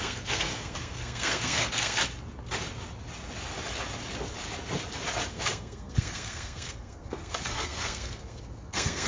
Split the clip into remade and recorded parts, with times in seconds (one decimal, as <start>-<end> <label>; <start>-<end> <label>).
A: 0.0-2.0 remade; 2.0-5.3 recorded; 5.3-9.1 remade